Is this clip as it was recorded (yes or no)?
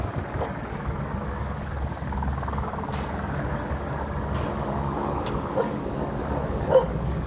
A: no